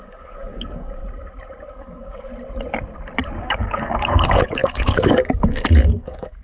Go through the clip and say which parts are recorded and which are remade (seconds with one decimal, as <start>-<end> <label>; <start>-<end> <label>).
0.0-1.0 remade; 1.0-1.7 recorded; 1.7-2.3 remade; 2.3-3.4 recorded; 3.4-6.4 remade